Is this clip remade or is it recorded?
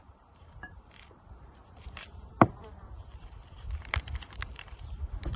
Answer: remade